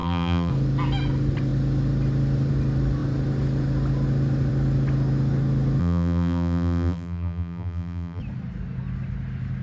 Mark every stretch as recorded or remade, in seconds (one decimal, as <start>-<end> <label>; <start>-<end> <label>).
0.0-0.5 remade; 0.5-5.8 recorded; 5.8-8.2 remade; 8.2-9.6 recorded